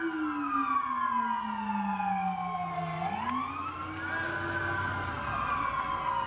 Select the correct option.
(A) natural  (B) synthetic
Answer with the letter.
A